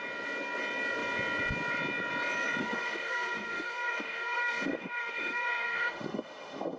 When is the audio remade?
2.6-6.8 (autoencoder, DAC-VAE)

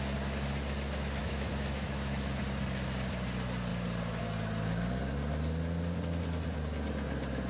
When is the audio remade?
1.2-2.4 (autoencoder, DAC-VAE)

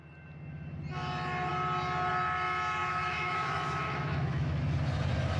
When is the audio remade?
2.8-4.6 (autoencoder, DAC-VAE)

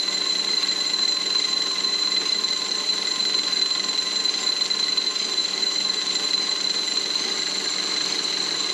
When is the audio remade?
5.4-6.0 (autoencoder, DAC-VAE)

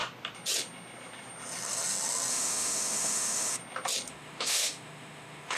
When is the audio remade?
2.3-3.6 (autoencoder, DAC-VAE); 4.1-5.6

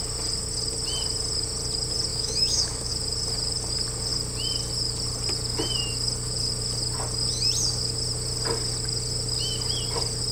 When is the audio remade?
2.1-2.9 (autoencoder, DAC-VAE)

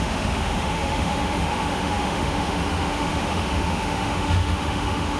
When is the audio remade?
0.0-5.2 (autoencoder, DAC-VAE)